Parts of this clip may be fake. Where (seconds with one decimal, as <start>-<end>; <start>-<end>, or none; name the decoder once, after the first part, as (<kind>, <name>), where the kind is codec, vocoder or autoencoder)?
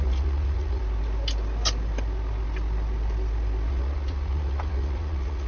0.0-0.8 (vocoder, Vocos); 3.7-5.5